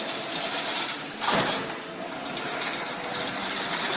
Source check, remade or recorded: recorded